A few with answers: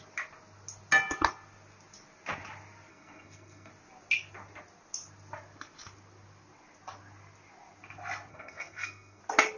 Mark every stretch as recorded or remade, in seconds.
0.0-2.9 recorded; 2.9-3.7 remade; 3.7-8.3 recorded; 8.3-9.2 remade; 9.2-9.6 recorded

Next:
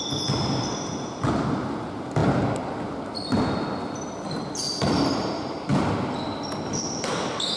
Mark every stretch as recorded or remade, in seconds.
0.0-7.6 recorded

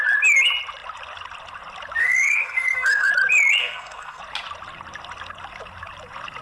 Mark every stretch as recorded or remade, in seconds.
0.0-2.0 recorded; 2.0-3.1 remade; 3.1-3.6 recorded; 3.6-4.2 remade; 4.2-6.4 recorded

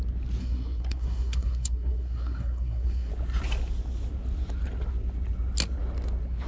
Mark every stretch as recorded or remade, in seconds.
0.0-0.4 recorded; 0.4-3.1 remade; 3.1-6.5 recorded

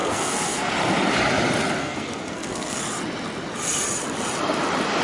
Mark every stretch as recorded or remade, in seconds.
0.0-0.7 remade; 0.7-1.8 recorded; 1.8-2.8 remade; 2.8-5.0 recorded

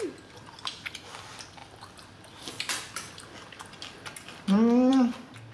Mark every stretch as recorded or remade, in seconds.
0.0-5.5 recorded